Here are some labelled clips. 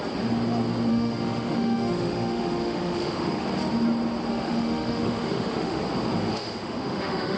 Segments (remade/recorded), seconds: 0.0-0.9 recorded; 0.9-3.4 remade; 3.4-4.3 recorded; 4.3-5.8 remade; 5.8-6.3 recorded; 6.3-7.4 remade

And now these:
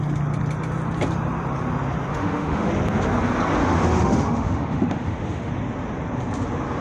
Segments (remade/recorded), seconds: 0.0-2.1 recorded; 2.1-2.7 remade; 2.7-3.6 recorded; 3.6-5.5 remade; 5.5-6.8 recorded

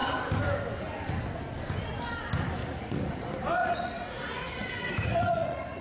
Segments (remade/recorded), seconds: 0.0-2.6 recorded; 2.6-3.1 remade; 3.1-3.6 recorded; 3.6-5.8 remade

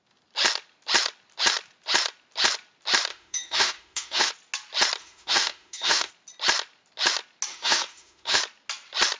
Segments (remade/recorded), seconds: 0.0-3.1 recorded; 3.1-4.3 remade; 4.3-5.0 recorded; 5.0-6.1 remade; 6.1-7.5 recorded; 7.5-8.4 remade; 8.4-9.2 recorded

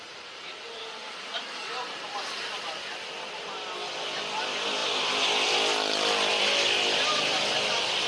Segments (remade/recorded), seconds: 0.0-8.1 recorded

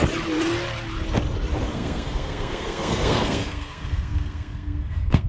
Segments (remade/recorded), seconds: 0.0-1.7 recorded; 1.7-5.3 remade